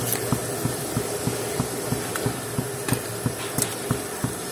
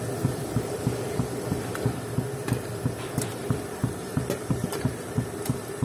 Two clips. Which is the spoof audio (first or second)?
second